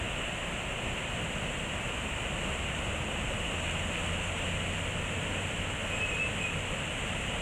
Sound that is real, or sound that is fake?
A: real